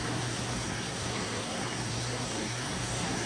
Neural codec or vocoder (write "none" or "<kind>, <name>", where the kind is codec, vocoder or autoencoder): codec, SNAC